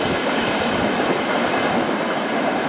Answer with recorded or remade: recorded